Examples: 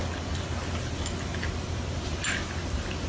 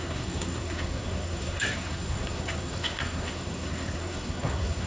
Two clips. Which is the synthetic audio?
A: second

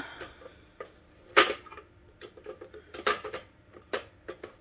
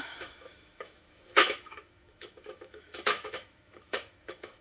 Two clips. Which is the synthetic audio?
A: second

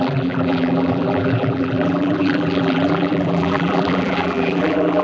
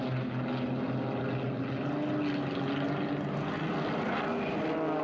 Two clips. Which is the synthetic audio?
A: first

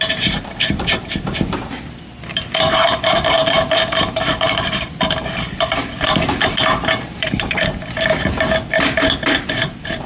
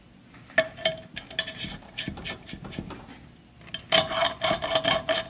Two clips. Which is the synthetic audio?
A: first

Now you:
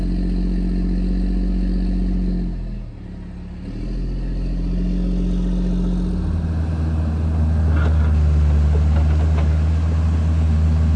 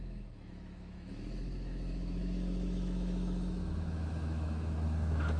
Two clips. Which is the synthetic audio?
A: second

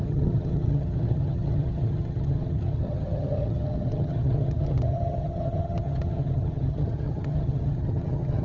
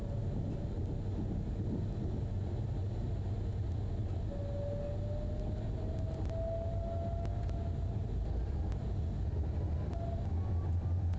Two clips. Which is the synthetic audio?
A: first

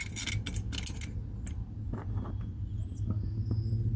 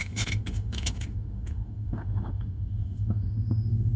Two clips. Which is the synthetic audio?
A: second